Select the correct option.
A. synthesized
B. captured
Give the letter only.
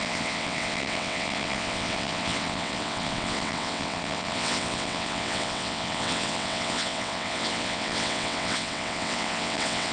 A